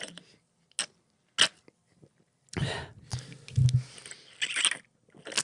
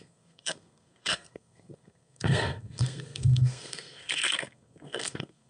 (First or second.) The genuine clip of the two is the first